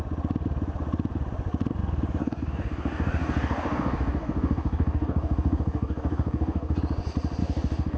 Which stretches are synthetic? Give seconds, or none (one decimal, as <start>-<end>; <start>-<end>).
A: 2.2-6.8; 7.4-8.0